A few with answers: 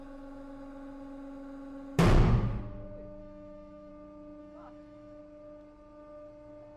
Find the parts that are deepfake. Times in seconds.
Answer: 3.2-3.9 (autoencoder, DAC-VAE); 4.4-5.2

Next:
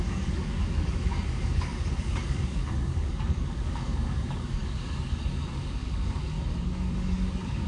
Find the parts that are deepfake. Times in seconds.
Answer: 0.0-7.7 (codec, DAC)

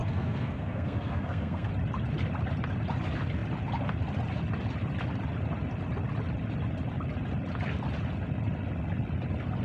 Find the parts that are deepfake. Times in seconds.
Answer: 0.0-1.7 (codec, SNAC)

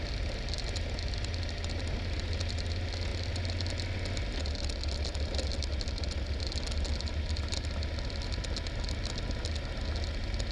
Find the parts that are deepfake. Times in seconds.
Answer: none

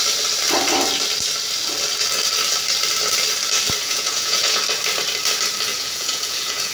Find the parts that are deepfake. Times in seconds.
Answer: 3.8-4.6 (vocoder, Vocos); 5.7-6.7

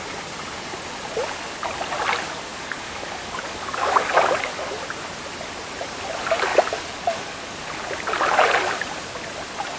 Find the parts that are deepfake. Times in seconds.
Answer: 2.5-4.8 (codec, DAC); 6.5-7.7